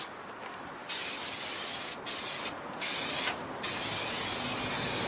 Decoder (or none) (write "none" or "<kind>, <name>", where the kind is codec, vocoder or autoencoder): none